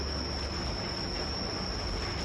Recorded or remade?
recorded